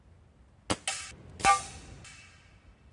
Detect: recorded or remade recorded